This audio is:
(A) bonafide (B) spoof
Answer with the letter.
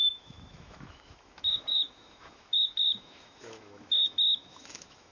B